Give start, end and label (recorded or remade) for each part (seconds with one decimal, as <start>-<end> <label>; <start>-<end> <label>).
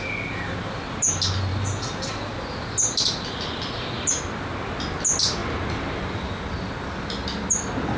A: 0.0-8.0 recorded